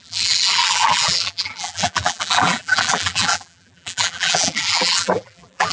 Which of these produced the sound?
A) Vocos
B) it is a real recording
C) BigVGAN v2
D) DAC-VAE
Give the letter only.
C